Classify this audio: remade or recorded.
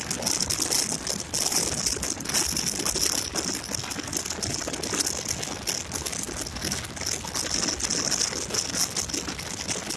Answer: recorded